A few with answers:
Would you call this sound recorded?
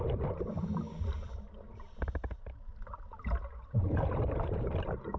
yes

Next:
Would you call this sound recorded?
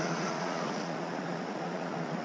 no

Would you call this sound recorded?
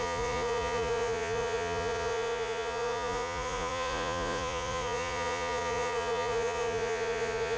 no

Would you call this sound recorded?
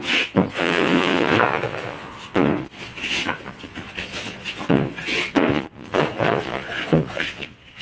no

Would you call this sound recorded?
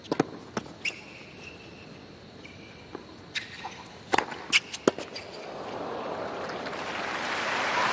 yes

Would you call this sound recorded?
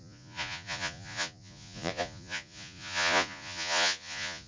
no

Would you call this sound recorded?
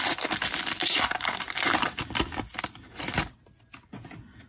yes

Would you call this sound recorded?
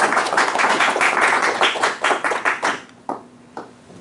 no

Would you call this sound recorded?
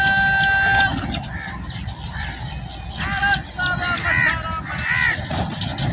yes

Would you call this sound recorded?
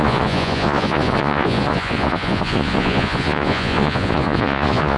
no